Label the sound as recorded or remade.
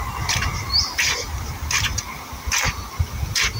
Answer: recorded